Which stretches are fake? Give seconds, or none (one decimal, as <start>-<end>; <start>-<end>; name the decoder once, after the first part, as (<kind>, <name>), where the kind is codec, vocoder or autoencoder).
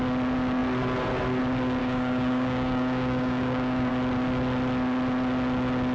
1.8-3.9 (codec, DAC)